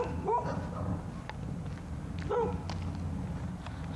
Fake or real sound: real